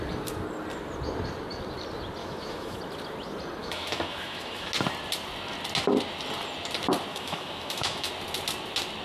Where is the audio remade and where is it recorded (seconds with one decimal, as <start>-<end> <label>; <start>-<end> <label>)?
0.0-2.2 recorded; 2.2-2.8 remade; 2.8-3.6 recorded; 3.6-4.7 remade; 4.7-7.1 recorded; 7.1-8.1 remade; 8.1-9.0 recorded